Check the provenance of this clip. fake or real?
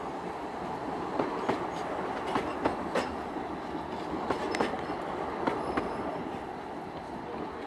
real